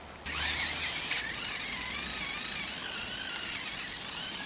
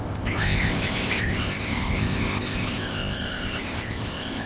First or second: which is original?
first